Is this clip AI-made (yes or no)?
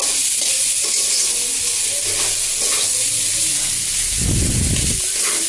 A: no